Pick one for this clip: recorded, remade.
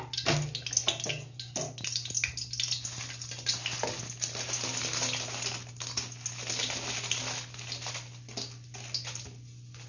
recorded